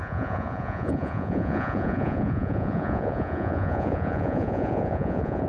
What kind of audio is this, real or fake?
fake